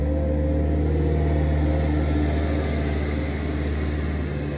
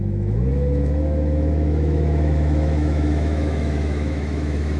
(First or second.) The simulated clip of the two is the second